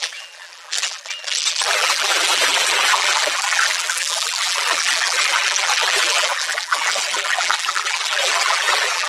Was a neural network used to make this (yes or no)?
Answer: yes